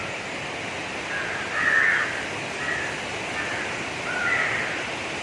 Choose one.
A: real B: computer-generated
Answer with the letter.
A